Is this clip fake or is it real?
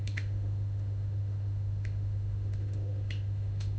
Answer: fake